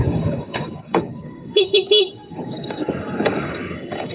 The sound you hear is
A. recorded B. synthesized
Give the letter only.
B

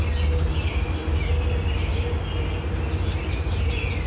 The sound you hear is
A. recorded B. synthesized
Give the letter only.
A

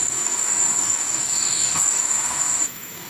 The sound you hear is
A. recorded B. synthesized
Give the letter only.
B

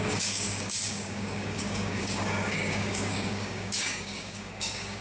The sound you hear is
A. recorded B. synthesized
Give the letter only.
B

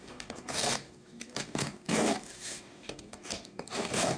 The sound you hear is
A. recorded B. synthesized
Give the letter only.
B